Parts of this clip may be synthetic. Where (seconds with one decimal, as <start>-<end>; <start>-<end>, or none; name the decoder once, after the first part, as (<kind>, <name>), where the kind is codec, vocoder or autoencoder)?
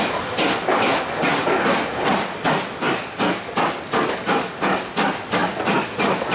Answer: none